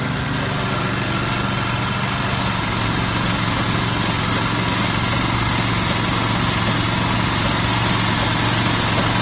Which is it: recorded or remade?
recorded